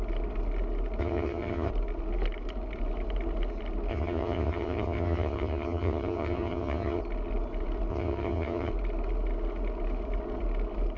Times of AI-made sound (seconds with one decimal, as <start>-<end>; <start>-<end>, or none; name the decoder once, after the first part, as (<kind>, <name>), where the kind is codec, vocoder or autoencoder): 1.0-1.7 (vocoder, HiFi-GAN); 3.9-7.0; 7.9-8.7